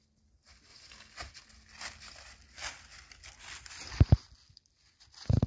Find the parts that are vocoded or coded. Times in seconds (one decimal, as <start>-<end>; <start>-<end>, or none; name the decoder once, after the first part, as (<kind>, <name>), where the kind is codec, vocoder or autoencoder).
none